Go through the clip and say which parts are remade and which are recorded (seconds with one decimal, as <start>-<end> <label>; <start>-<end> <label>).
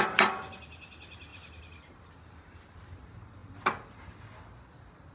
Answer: 0.0-5.1 recorded